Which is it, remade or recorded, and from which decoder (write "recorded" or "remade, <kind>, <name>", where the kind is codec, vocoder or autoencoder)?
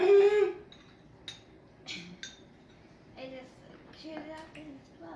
recorded